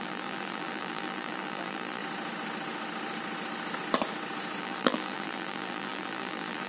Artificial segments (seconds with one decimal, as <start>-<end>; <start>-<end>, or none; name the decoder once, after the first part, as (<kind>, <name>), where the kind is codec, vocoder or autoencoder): 0.0-2.0 (vocoder, BigVGAN v2); 4.6-6.7